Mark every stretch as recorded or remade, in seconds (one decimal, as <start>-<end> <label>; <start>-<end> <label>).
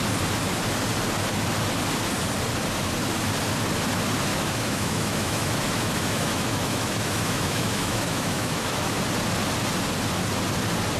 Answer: 0.0-4.3 recorded; 4.3-9.0 remade; 9.0-11.0 recorded